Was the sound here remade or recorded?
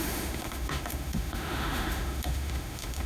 remade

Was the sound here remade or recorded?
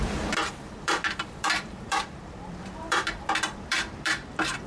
remade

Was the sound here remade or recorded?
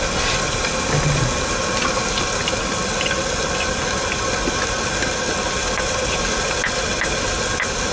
recorded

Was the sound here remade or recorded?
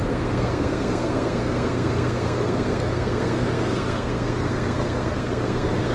remade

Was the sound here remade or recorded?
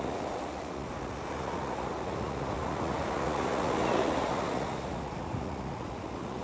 remade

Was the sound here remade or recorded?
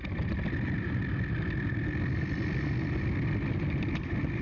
recorded